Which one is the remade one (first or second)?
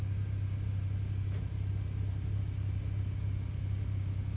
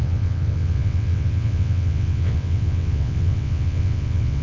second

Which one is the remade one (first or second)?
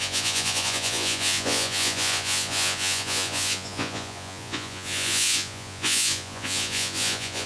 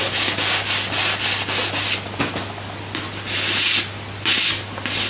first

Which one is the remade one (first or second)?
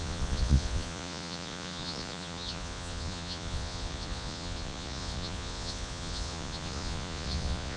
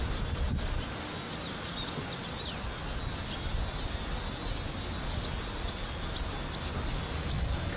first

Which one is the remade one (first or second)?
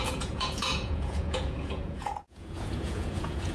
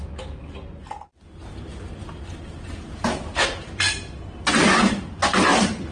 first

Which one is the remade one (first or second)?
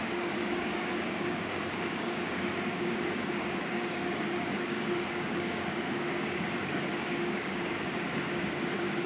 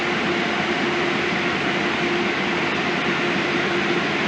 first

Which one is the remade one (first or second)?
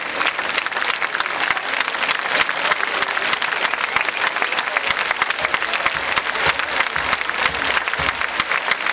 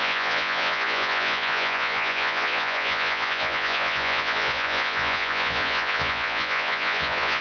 second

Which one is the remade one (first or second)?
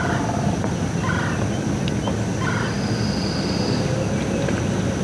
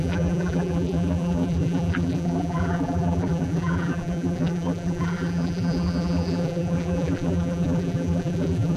second